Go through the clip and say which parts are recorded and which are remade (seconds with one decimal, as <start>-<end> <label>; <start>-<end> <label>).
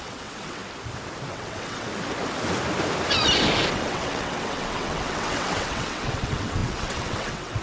0.0-0.6 remade; 0.6-1.3 recorded; 1.3-1.9 remade; 1.9-3.7 recorded; 3.7-7.6 remade